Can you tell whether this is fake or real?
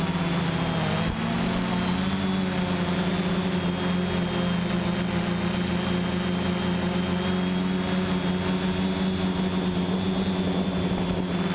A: real